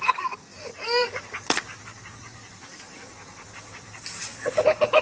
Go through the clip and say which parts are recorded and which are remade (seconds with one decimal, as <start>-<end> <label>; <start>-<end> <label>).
0.0-5.0 remade